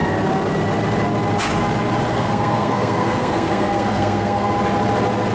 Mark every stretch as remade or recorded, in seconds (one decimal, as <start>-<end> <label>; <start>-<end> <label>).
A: 0.0-2.1 recorded; 2.1-4.5 remade; 4.5-5.3 recorded